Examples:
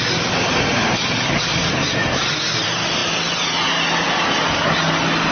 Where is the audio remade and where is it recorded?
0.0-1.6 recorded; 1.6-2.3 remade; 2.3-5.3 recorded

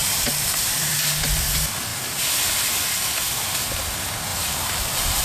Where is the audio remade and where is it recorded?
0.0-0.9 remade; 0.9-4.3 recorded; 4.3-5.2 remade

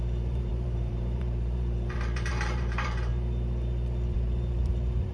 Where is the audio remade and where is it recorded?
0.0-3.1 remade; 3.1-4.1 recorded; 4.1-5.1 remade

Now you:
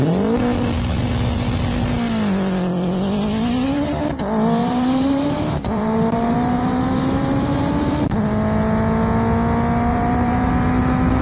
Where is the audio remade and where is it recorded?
0.0-4.6 recorded; 4.6-7.7 remade; 7.7-9.9 recorded; 9.9-10.5 remade; 10.5-11.2 recorded

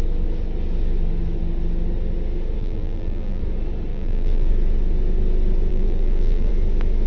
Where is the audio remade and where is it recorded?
0.0-2.6 recorded; 2.6-3.4 remade; 3.4-3.9 recorded; 3.9-4.5 remade; 4.5-5.7 recorded; 5.7-6.5 remade; 6.5-7.1 recorded

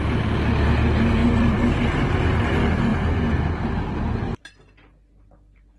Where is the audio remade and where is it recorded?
0.0-1.2 recorded; 1.2-1.8 remade; 1.8-5.8 recorded

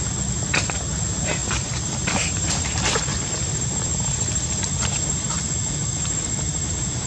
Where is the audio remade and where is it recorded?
0.0-1.4 recorded; 1.4-5.3 remade; 5.3-7.1 recorded

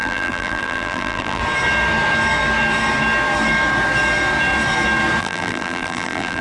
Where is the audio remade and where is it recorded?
0.0-1.4 remade; 1.4-5.2 recorded; 5.2-6.4 remade